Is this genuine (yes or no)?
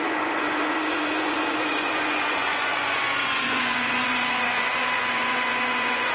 no